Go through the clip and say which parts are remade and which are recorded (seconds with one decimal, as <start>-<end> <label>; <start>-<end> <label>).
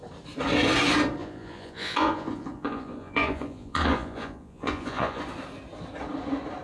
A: 0.0-1.2 recorded; 1.2-5.2 remade; 5.2-6.6 recorded